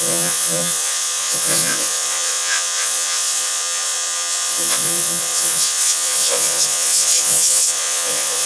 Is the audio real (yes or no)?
no